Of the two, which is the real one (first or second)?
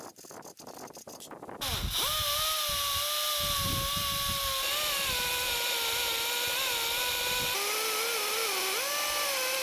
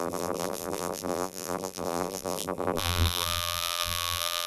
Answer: first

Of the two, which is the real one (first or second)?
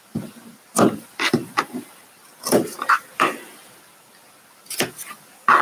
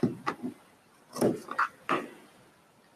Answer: second